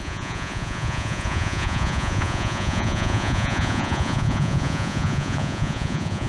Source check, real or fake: fake